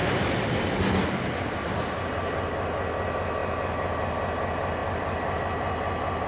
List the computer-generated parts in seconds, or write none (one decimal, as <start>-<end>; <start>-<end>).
0.0-0.7; 4.8-5.4